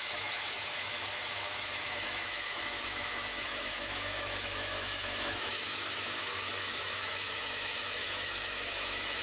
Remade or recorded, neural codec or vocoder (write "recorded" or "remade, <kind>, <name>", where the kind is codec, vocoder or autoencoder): remade, autoencoder, DAC-VAE